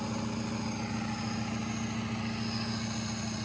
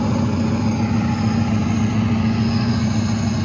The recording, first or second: first